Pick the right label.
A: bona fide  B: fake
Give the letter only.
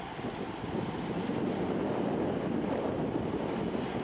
A